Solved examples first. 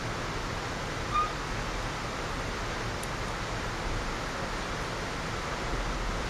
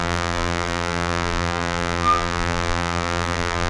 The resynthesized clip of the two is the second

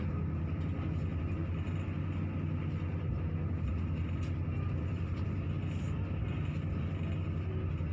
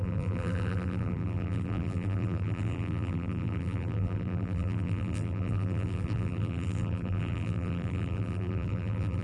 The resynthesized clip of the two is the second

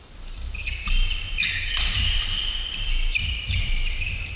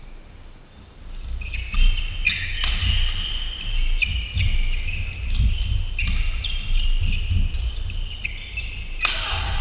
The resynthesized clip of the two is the first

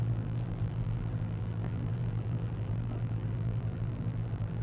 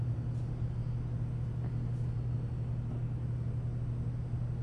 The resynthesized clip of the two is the first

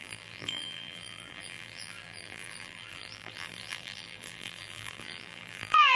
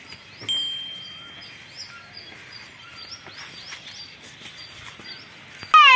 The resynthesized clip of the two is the first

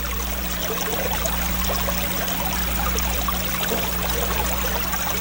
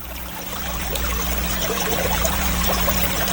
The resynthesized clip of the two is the second